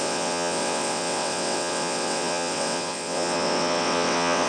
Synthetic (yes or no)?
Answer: yes